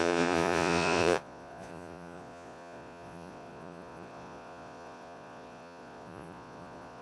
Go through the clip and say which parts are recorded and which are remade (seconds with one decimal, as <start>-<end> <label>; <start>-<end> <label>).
0.0-7.0 remade